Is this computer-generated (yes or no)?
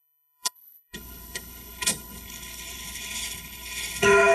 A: yes